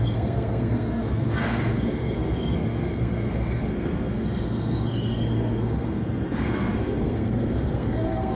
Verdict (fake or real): fake